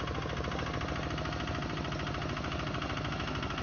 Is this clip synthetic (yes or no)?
no